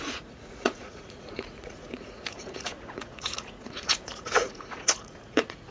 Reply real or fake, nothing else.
fake